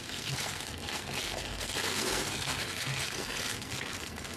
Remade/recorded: remade